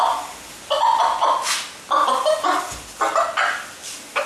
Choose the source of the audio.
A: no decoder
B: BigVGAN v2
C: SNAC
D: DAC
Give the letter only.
A